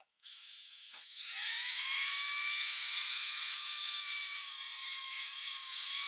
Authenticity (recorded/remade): remade